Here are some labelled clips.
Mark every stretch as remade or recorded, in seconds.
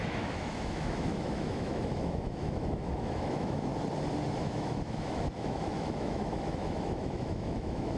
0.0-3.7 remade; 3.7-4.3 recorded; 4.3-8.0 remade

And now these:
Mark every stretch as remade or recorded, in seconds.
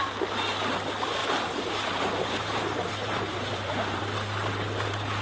0.0-1.2 recorded; 1.2-4.0 remade; 4.0-5.2 recorded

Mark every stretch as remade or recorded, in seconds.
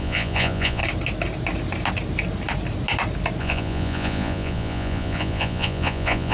0.0-0.8 remade; 0.8-3.4 recorded; 3.4-6.3 remade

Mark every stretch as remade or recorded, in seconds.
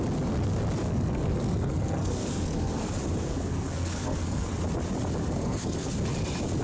0.0-0.9 recorded; 0.9-2.9 remade; 2.9-3.3 recorded; 3.3-4.5 remade; 4.5-5.2 recorded; 5.2-5.9 remade; 5.9-6.6 recorded